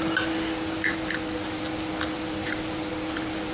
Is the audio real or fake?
real